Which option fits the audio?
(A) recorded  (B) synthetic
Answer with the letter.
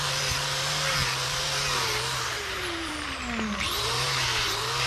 B